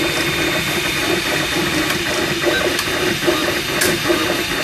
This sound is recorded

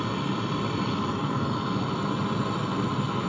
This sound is recorded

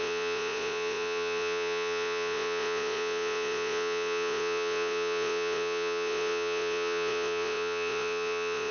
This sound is remade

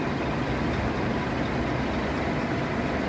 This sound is recorded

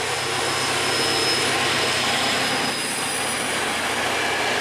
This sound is recorded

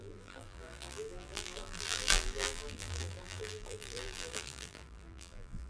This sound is remade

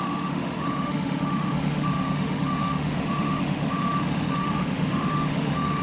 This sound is remade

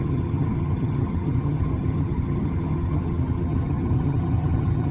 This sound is remade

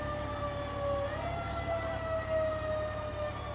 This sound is recorded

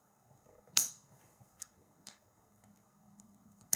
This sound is remade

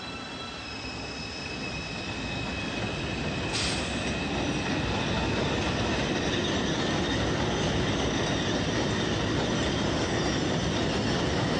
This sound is recorded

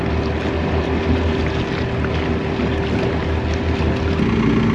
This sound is recorded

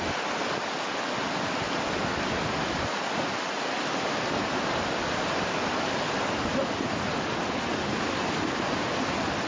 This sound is recorded